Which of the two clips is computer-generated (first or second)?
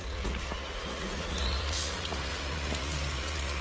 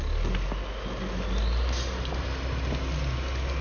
first